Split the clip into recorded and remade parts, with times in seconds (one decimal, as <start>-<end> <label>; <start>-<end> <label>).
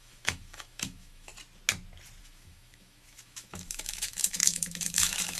0.0-1.3 remade; 1.3-2.2 recorded; 2.2-5.4 remade